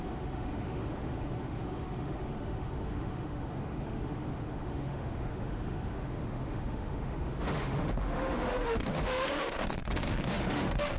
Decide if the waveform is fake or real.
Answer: fake